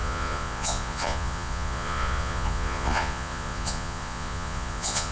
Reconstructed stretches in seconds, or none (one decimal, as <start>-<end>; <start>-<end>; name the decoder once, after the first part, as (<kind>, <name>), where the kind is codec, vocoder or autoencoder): 0.0-5.1 (vocoder, Vocos)